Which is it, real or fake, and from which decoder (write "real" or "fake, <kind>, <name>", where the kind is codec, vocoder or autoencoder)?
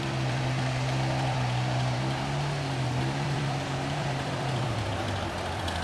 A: fake, vocoder, BigVGAN v2